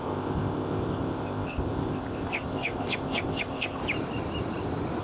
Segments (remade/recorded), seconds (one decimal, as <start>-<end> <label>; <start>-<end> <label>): 0.0-3.8 remade; 3.8-5.0 recorded